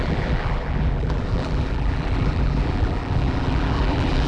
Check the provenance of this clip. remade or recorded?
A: remade